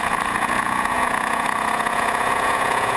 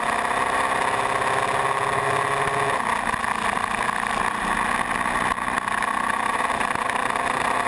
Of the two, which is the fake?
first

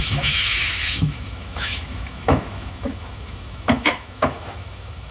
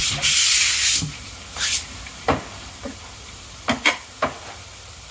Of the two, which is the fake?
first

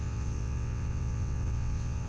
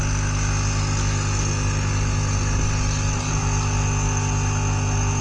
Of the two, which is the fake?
first